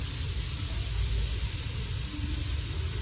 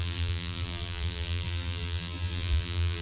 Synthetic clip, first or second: second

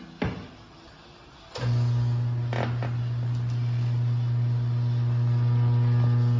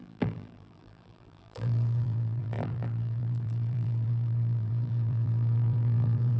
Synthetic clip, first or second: second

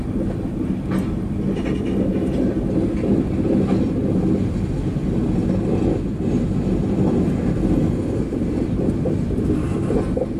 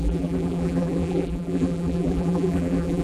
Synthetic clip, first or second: second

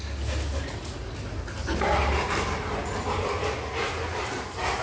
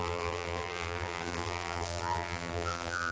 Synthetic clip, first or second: second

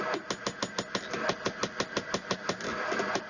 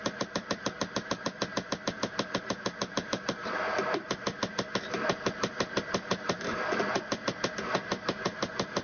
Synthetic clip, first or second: second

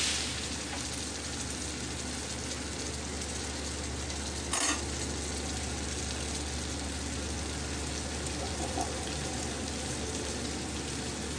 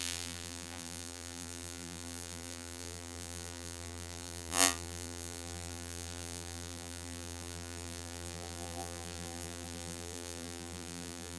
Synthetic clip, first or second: second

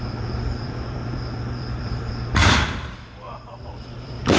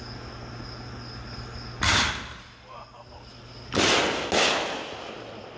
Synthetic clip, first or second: first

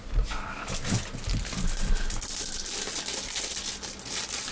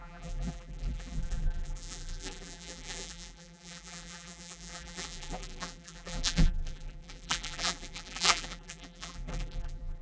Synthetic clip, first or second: second